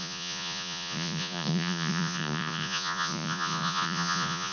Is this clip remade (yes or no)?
yes